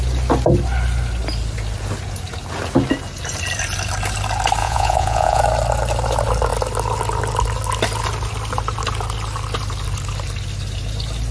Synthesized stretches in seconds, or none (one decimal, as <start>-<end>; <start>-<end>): 4.6-5.4